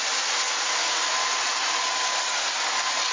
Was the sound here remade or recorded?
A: recorded